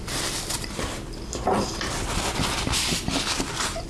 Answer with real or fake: real